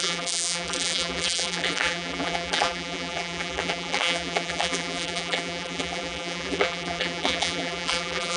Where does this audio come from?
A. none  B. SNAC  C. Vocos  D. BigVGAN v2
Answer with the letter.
D